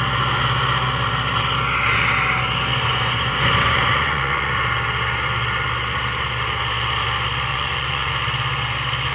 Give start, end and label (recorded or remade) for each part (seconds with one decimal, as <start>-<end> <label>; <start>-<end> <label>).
0.0-2.7 recorded; 2.7-4.5 remade; 4.5-7.5 recorded; 7.5-8.1 remade; 8.1-9.1 recorded